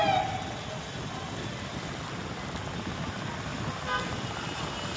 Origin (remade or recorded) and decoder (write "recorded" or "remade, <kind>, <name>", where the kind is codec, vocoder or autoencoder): recorded